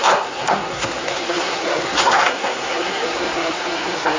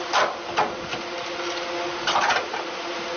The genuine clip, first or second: second